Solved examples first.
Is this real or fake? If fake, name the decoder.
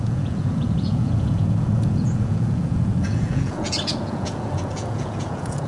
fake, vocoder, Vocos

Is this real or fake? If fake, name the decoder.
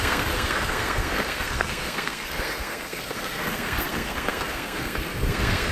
fake, codec, SNAC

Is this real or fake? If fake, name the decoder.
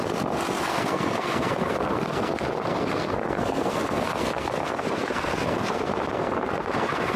fake, codec, SNAC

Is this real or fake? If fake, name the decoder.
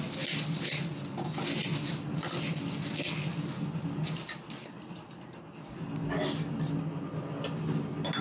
real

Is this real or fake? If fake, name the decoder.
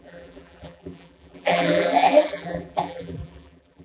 fake, vocoder, BigVGAN v2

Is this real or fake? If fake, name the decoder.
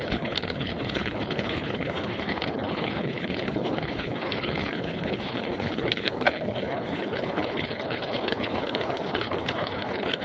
fake, codec, HILCodec